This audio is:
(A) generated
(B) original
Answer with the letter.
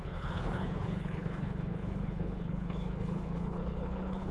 A